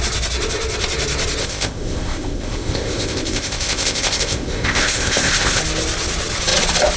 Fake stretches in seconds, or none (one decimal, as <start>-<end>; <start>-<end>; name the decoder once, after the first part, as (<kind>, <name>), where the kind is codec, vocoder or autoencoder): 1.4-5.6 (codec, ZipCodec)